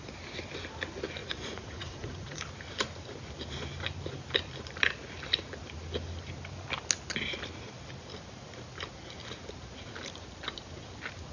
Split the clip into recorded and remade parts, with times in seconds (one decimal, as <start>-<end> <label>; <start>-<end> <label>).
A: 0.0-1.2 recorded; 1.2-2.4 remade; 2.4-11.3 recorded